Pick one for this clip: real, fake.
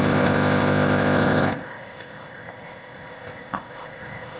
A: fake